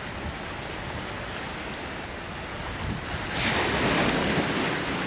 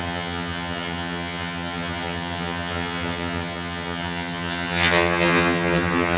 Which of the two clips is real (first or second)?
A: first